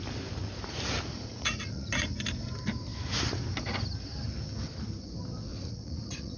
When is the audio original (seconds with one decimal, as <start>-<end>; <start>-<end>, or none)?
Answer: 0.0-1.1; 1.9-5.5